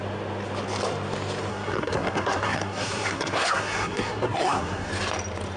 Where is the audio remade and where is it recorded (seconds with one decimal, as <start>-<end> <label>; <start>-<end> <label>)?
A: 0.0-1.5 recorded; 1.5-4.9 remade; 4.9-5.6 recorded